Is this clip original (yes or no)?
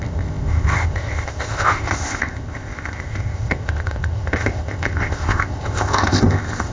no